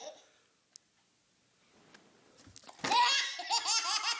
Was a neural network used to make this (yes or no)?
no